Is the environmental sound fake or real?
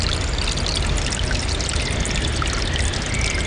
real